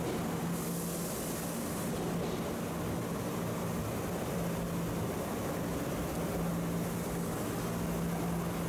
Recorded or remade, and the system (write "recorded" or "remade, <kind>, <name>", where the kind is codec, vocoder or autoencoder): recorded